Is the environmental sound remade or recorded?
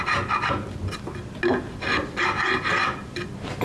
recorded